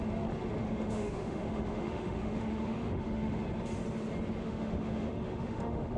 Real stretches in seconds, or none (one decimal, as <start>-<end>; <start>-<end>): 0.0-0.6; 3.4-4.4